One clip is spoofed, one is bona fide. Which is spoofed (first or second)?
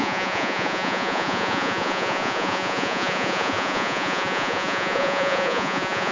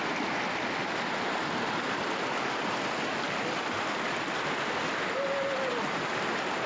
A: first